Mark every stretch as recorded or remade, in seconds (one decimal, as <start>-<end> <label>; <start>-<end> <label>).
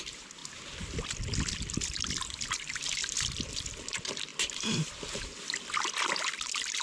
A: 0.0-6.8 recorded